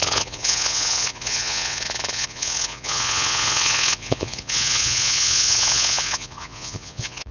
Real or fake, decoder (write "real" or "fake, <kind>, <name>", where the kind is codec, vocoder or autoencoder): fake, vocoder, Vocos